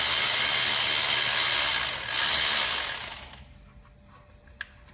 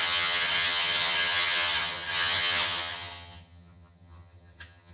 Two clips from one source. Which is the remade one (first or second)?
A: second